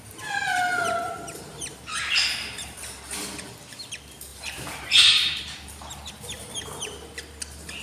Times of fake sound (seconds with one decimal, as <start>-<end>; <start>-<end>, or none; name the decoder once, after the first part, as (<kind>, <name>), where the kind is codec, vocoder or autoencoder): 4.3-6.1 (vocoder, BigVGAN v2)